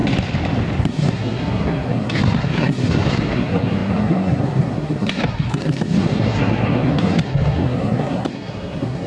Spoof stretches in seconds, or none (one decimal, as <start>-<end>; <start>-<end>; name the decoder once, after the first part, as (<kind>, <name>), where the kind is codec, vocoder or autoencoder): 0.8-9.1 (codec, SNAC)